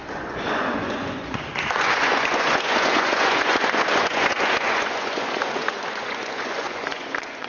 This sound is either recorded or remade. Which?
remade